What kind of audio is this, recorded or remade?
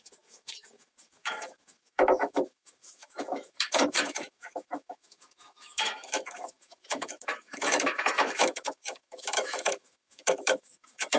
remade